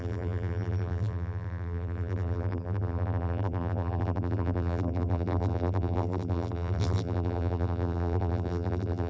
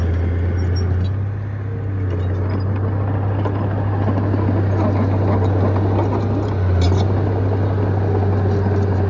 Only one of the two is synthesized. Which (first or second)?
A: first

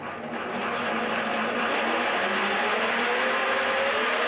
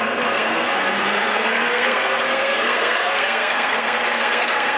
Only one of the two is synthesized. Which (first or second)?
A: second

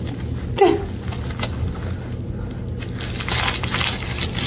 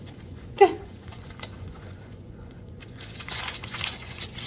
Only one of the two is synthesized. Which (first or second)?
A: second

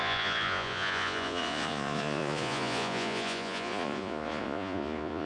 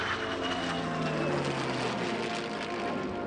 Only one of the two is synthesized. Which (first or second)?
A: first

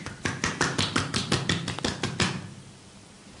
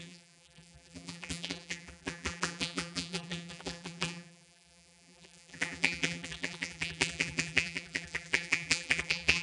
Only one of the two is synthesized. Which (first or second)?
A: second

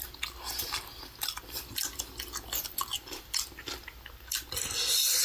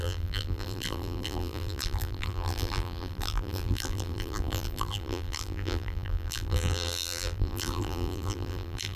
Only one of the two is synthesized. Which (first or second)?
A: second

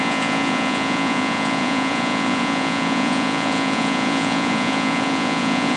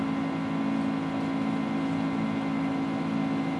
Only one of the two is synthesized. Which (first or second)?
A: first